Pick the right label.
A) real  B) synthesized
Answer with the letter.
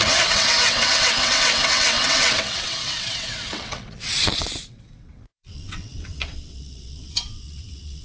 B